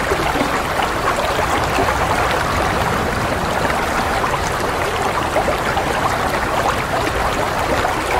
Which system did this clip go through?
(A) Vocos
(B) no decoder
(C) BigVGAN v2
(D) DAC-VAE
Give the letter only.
B